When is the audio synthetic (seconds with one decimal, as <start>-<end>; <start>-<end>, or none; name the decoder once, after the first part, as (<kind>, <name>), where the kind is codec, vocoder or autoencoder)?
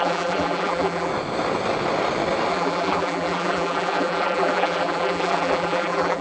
0.0-1.1 (vocoder, BigVGAN v2); 2.5-6.2